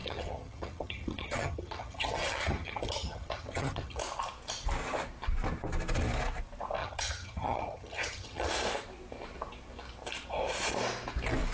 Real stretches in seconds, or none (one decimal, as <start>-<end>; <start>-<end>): 4.0-6.8; 8.5-11.5